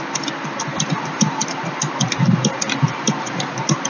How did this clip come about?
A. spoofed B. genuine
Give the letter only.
B